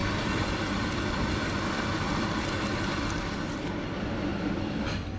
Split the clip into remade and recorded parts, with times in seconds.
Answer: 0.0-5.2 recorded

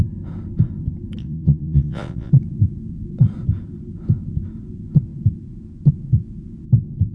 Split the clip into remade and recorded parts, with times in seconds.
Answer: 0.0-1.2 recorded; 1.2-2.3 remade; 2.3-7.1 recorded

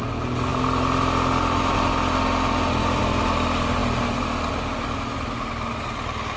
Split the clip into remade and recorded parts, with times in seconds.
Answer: 0.0-6.4 recorded

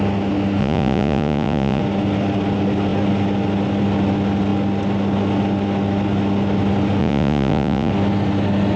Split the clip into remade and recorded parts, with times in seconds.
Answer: 0.0-0.6 recorded; 0.6-1.8 remade; 1.8-7.0 recorded; 7.0-7.9 remade; 7.9-8.8 recorded

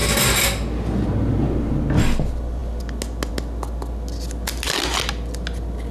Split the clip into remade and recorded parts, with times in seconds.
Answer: 0.0-5.9 recorded

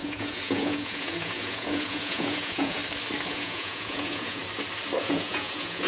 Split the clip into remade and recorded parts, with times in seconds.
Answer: 0.0-2.8 remade; 2.8-3.3 recorded; 3.3-4.4 remade; 4.4-5.0 recorded; 5.0-5.9 remade

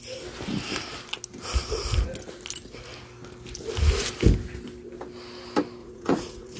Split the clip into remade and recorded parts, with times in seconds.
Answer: 0.0-5.8 recorded; 5.8-6.6 remade